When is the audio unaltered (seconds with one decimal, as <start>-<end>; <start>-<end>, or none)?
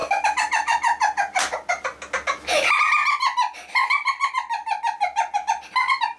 0.0-6.2